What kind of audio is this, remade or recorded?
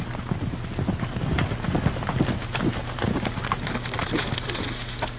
recorded